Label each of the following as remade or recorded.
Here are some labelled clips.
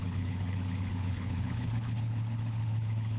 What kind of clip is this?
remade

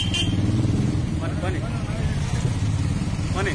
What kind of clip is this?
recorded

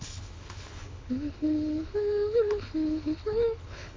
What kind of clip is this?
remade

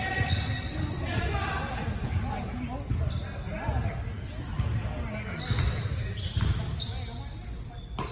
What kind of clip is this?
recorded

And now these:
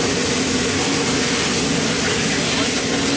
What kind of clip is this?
recorded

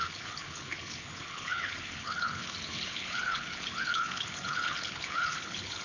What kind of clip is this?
remade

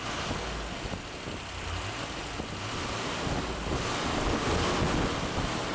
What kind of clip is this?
recorded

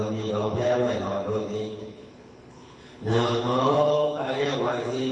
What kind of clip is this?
remade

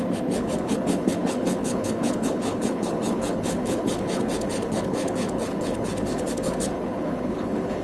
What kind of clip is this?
remade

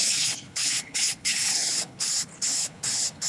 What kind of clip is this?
remade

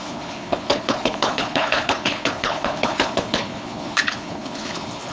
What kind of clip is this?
remade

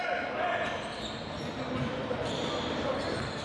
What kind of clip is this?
recorded